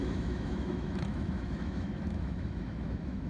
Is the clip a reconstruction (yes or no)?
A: yes